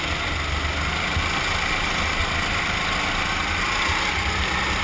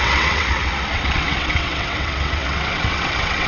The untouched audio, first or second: first